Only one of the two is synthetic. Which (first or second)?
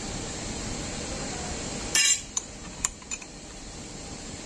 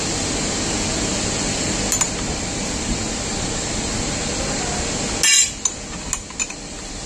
first